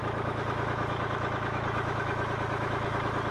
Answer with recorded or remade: remade